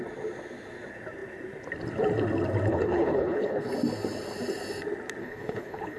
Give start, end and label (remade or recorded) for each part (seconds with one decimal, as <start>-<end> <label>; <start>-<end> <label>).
0.0-2.7 recorded; 2.7-3.7 remade; 3.7-5.2 recorded; 5.2-6.0 remade